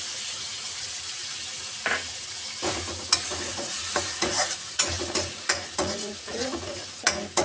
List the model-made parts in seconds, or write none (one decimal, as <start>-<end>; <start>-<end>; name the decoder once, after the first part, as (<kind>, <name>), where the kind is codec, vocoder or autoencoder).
0.0-1.2 (vocoder, Vocos); 1.8-7.4